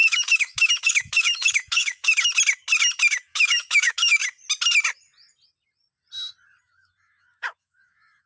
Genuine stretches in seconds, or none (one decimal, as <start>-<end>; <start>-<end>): 2.1-3.2; 4.2-6.6